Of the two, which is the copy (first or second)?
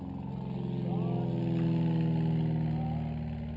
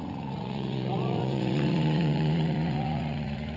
second